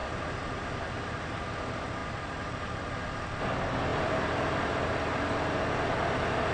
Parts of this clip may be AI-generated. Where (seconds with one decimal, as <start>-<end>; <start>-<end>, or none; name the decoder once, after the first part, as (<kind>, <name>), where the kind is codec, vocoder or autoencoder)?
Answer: 0.0-1.4 (vocoder, BigVGAN v2); 2.0-3.4; 3.9-4.9